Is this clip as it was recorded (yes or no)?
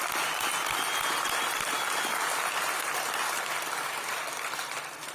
yes